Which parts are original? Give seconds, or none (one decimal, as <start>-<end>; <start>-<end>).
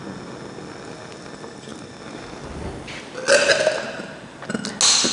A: 0.0-5.1